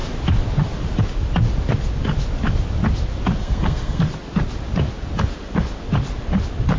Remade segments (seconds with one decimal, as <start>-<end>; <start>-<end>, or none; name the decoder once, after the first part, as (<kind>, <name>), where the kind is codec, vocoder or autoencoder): 3.4-4.0 (codec, SNAC)